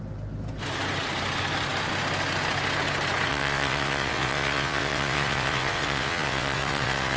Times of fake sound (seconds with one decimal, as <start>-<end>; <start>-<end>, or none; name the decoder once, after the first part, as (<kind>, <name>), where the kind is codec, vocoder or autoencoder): 3.3-7.2 (vocoder, WaveNeXt)